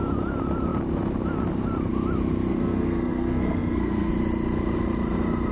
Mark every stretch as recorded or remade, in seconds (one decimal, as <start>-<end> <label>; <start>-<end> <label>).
0.0-2.5 recorded; 2.5-4.1 remade; 4.1-5.5 recorded